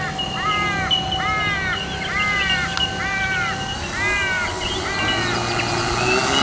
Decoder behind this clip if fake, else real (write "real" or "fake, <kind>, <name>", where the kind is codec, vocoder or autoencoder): real